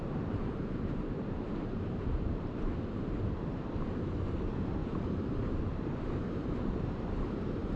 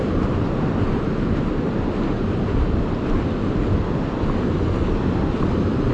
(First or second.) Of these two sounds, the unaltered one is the second